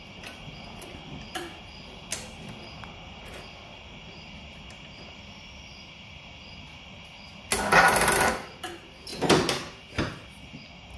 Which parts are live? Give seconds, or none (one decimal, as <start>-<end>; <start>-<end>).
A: 0.0-11.0